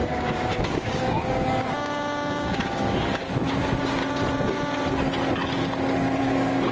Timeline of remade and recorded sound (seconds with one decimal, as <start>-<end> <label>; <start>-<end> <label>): 0.0-4.0 remade; 4.0-6.2 recorded; 6.2-6.7 remade